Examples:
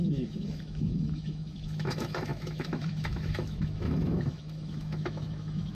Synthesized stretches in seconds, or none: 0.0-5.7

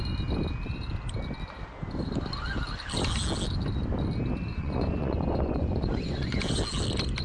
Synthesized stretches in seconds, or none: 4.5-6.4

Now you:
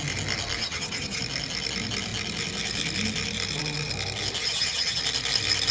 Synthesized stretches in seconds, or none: 0.6-1.2; 4.4-5.0

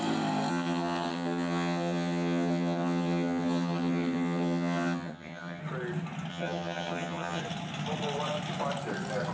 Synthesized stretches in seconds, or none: 0.5-5.6; 6.3-7.4